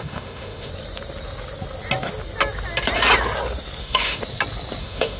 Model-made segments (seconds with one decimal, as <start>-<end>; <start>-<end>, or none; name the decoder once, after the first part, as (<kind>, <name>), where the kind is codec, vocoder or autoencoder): 0.0-0.7 (autoencoder, DAC-VAE); 3.8-4.2; 4.8-5.2